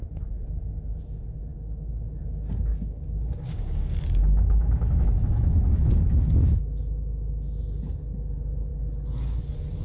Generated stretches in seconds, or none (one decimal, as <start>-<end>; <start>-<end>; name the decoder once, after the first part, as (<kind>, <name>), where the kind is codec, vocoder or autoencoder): 1.5-2.2 (codec, DAC); 2.7-5.4